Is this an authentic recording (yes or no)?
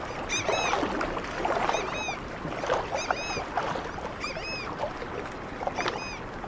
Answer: yes